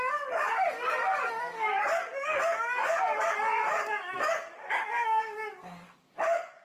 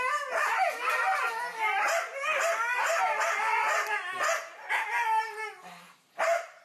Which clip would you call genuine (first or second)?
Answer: second